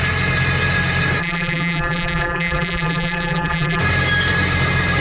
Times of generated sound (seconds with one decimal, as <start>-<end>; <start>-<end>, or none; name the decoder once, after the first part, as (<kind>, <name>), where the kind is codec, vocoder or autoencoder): 1.2-3.8 (vocoder, BigVGAN v2)